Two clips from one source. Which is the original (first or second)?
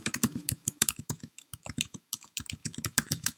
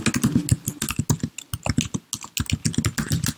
second